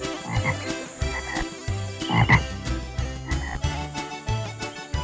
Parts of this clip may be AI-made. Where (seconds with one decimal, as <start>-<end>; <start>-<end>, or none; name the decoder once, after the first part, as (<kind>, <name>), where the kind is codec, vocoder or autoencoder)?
none